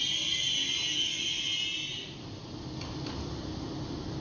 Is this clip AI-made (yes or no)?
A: no